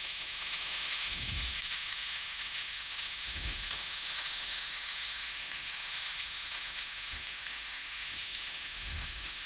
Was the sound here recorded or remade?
remade